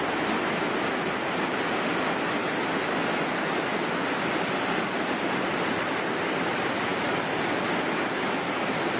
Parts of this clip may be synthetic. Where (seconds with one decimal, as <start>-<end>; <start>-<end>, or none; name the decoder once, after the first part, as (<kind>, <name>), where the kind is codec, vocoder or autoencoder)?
none